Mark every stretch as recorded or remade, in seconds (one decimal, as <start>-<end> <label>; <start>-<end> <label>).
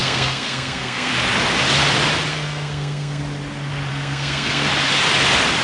0.0-1.1 remade; 1.1-2.3 recorded; 2.3-3.2 remade; 3.2-3.9 recorded; 3.9-4.7 remade; 4.7-5.6 recorded